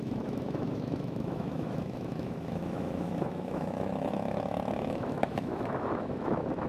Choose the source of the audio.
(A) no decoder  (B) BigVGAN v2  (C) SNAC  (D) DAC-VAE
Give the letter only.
D